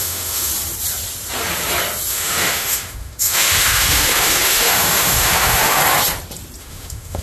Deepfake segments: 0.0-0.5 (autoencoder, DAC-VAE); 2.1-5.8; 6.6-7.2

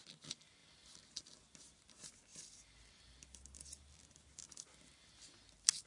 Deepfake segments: none

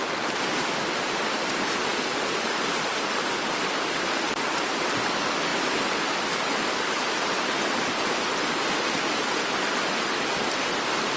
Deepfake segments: none

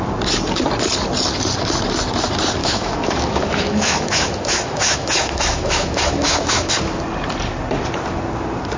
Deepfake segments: 2.6-6.7 (autoencoder, DAC-VAE)

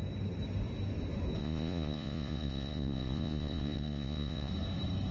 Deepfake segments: 1.4-4.5 (vocoder, Vocos)

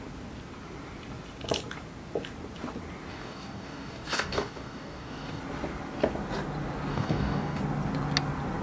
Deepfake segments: 3.1-5.4 (codec, DAC); 6.9-7.6

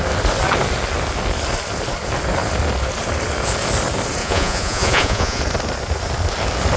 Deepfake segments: 4.2-5.4 (vocoder, Vocos)